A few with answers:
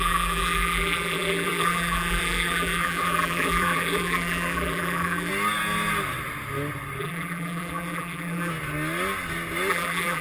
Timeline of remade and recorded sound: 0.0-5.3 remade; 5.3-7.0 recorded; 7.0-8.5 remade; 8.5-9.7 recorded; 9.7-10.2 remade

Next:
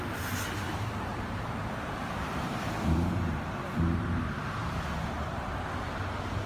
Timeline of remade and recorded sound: 0.0-1.1 recorded; 1.1-4.0 remade; 4.0-4.6 recorded; 4.6-5.6 remade; 5.6-6.5 recorded

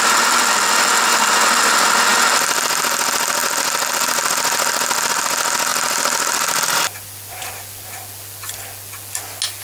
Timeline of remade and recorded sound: 0.0-2.1 recorded; 2.1-2.8 remade; 2.8-5.7 recorded; 5.7-7.5 remade; 7.5-9.6 recorded